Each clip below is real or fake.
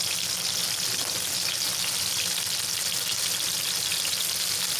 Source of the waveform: real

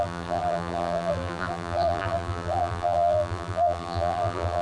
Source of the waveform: fake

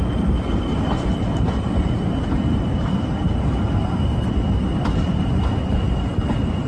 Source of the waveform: real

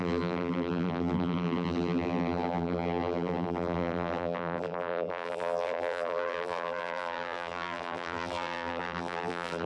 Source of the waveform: fake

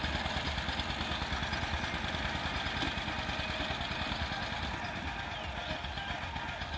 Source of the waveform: real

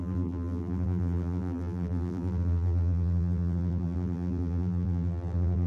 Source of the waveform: fake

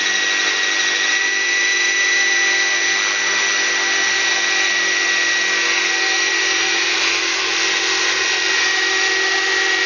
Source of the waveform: real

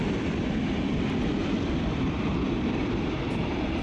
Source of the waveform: fake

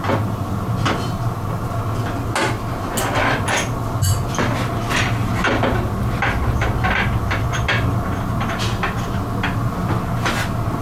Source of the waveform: real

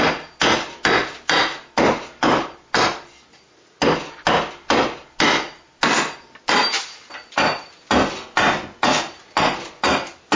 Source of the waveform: real